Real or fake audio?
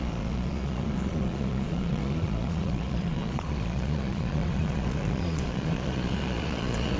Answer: fake